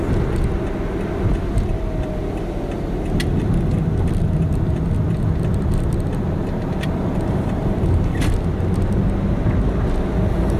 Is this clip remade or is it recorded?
recorded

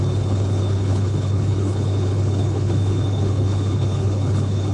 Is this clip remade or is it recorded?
remade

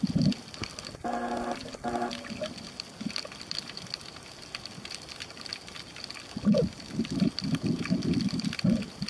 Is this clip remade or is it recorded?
recorded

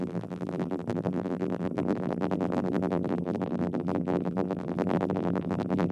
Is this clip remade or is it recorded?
remade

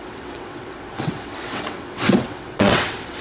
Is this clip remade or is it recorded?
remade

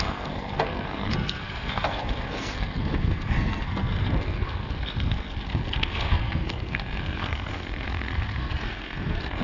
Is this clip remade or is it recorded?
remade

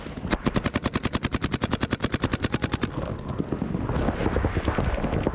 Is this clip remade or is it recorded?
recorded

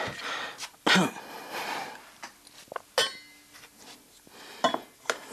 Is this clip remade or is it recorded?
recorded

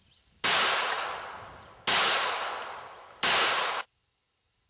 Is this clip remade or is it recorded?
recorded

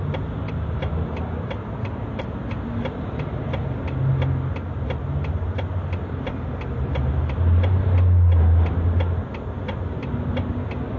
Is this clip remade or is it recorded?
recorded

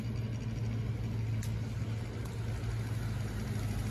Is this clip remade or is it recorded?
recorded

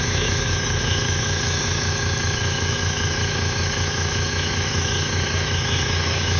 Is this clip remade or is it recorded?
remade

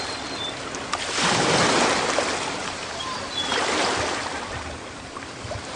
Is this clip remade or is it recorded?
recorded